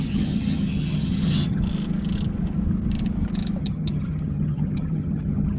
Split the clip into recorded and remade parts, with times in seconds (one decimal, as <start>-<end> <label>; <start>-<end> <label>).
0.0-1.6 remade; 1.6-3.6 recorded; 3.6-5.6 remade

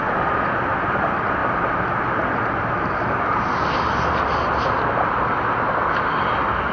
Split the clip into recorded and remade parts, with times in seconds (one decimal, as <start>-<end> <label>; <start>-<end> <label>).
0.0-6.7 recorded

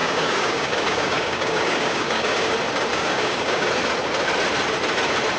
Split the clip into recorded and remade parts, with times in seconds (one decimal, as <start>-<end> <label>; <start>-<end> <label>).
0.0-2.5 remade; 2.5-2.9 recorded; 2.9-3.7 remade; 3.7-5.4 recorded

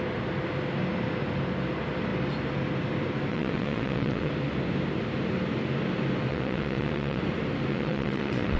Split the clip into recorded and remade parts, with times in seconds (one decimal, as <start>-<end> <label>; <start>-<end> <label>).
0.0-3.3 recorded; 3.3-4.3 remade; 4.3-6.3 recorded; 6.3-7.2 remade; 7.2-7.7 recorded; 7.7-8.6 remade

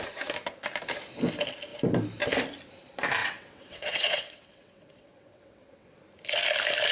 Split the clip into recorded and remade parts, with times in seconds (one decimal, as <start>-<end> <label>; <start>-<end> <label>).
0.0-3.2 recorded; 3.2-6.0 remade; 6.0-6.9 recorded

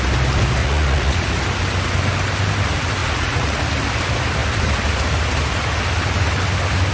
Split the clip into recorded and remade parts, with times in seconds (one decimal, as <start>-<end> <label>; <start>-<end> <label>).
0.0-0.6 recorded; 0.6-1.4 remade; 1.4-3.0 recorded; 3.0-3.6 remade; 3.6-6.9 recorded